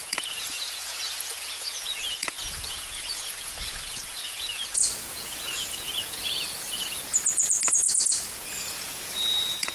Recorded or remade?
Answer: remade